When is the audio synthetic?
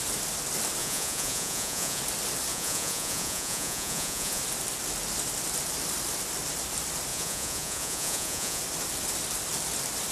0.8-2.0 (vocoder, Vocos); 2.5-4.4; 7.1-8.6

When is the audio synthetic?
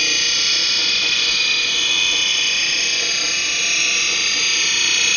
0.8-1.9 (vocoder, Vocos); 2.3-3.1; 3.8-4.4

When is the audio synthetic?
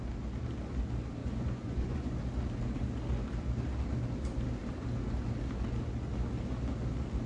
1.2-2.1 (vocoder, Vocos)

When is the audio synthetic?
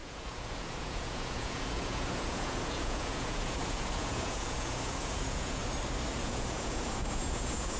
0.0-5.6 (vocoder, Vocos); 6.2-7.8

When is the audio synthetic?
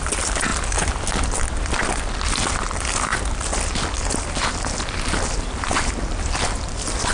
none